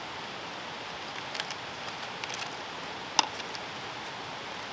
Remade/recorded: recorded